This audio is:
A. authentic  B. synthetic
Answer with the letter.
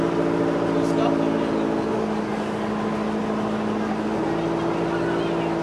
A